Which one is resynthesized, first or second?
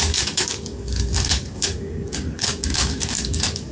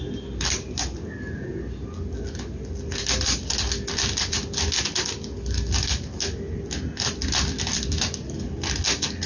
first